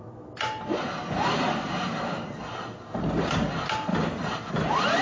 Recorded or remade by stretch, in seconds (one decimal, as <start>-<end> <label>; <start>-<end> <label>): 0.0-5.0 recorded